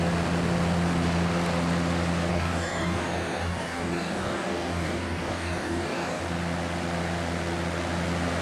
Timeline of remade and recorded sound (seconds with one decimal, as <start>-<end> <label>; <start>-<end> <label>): 0.0-2.3 recorded; 2.3-6.2 remade; 6.2-8.4 recorded